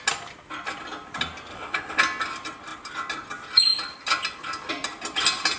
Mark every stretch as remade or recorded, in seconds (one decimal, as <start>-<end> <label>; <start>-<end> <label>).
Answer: 0.0-1.5 recorded; 1.5-2.0 remade; 2.0-5.6 recorded